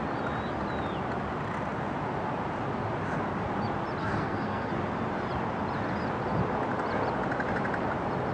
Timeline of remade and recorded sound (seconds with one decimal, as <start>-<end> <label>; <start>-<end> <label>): 0.0-4.0 recorded; 4.0-4.7 remade; 4.7-8.3 recorded